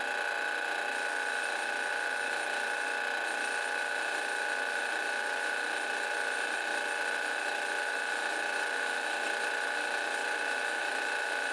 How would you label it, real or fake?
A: real